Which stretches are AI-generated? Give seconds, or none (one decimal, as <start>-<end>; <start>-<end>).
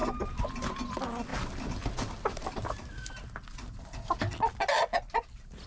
none